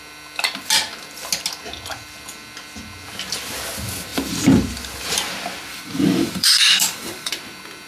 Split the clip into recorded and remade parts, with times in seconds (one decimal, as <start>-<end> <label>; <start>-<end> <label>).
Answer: 0.0-5.7 recorded; 5.7-7.3 remade; 7.3-7.9 recorded